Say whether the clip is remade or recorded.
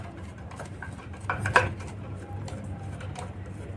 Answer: remade